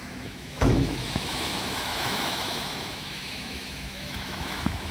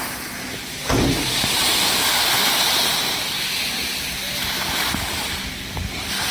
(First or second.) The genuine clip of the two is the second